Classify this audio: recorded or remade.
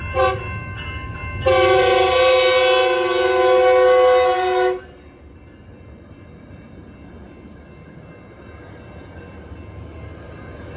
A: recorded